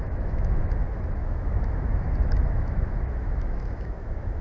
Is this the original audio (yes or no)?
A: no